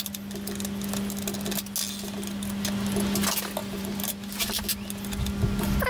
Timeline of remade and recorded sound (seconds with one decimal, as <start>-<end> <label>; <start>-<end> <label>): 0.0-3.6 recorded; 3.6-4.1 remade; 4.1-5.9 recorded